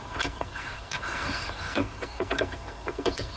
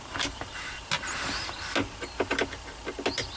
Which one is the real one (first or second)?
second